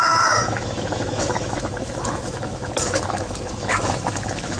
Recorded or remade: remade